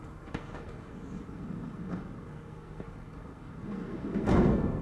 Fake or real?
fake